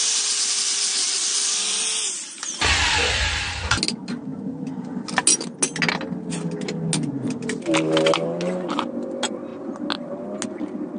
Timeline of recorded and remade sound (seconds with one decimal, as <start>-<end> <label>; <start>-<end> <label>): 0.0-11.0 recorded